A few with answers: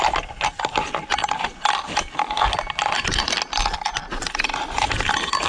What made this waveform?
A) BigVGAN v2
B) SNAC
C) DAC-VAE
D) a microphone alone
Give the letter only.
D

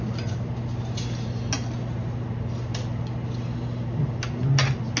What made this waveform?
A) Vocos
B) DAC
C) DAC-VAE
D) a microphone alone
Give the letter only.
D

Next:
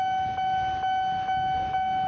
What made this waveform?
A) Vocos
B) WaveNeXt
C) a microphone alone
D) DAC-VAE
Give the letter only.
C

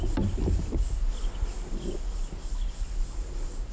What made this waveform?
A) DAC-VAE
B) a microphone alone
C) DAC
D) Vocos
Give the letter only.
B